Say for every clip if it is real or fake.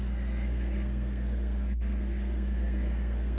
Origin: fake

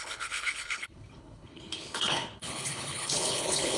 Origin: fake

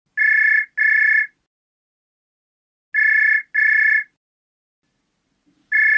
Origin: real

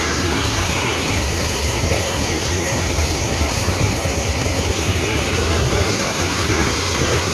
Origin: fake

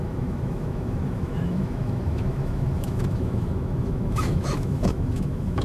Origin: fake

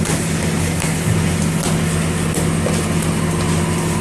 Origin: real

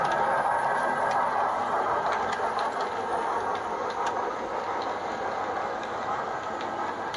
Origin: real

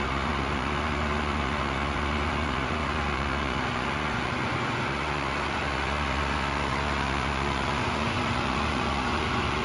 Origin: fake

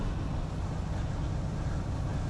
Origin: real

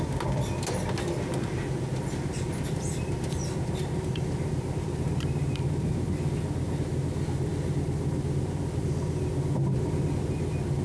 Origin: real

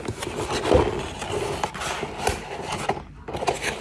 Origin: real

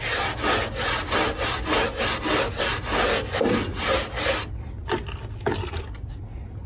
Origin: real